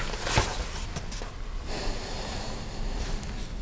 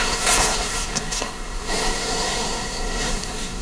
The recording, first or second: first